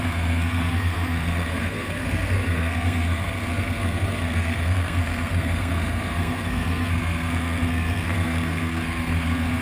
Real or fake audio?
fake